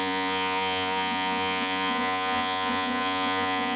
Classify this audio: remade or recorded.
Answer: remade